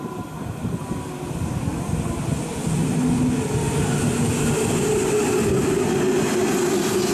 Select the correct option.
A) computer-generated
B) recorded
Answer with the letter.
B